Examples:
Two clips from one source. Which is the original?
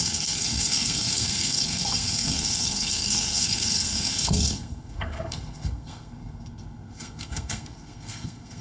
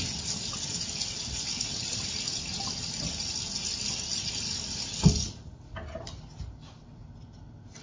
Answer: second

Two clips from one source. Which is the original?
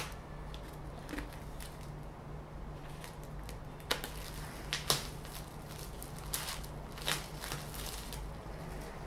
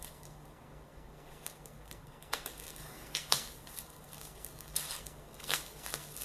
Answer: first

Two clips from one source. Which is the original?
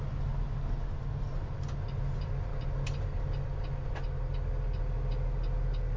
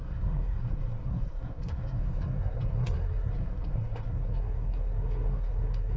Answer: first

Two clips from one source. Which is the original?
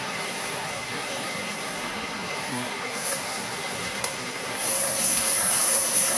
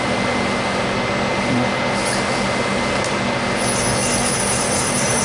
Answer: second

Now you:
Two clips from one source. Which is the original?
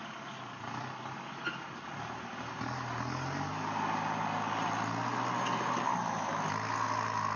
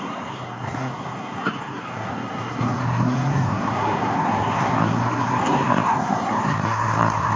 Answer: first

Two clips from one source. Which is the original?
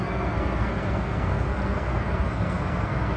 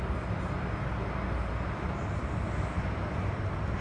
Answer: second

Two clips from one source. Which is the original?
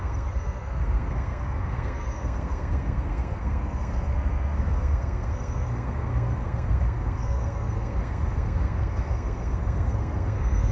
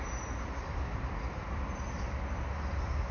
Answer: second